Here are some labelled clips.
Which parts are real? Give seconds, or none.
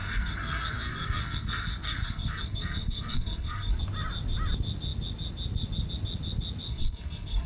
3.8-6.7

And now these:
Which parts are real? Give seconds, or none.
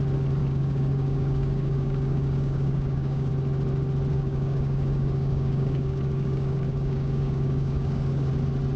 0.0-0.4; 3.3-4.1; 8.3-8.8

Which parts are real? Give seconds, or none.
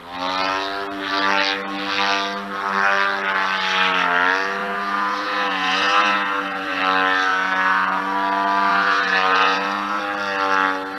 0.0-4.6; 6.8-7.3; 8.0-8.7; 10.0-11.0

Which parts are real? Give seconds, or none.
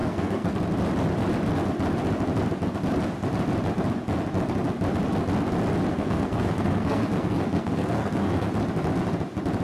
0.5-5.9; 8.5-9.6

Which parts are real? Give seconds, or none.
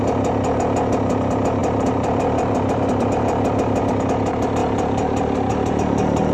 0.0-1.6; 3.8-6.3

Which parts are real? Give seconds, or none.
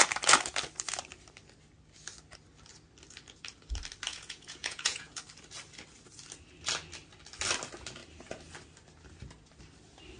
0.0-4.1; 5.2-10.2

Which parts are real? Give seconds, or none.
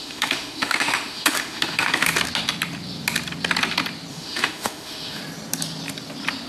2.1-4.1; 5.2-6.5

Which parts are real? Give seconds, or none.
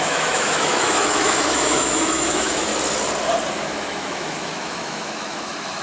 2.7-3.5